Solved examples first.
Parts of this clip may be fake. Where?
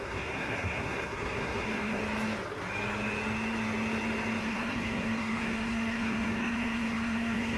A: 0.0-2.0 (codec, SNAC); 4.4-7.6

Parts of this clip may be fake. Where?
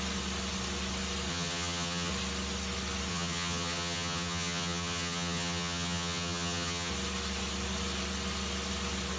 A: 1.3-2.1 (vocoder, HiFi-GAN); 3.1-6.9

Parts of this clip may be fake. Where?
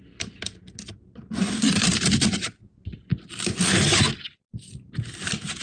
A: 3.1-4.7 (vocoder, BigVGAN v2)